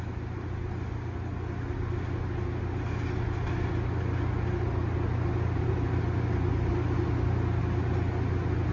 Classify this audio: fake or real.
real